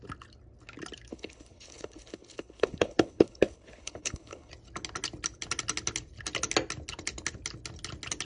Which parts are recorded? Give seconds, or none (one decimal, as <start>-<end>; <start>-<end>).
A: 0.0-1.1; 4.5-8.2